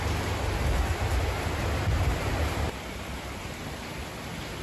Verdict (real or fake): real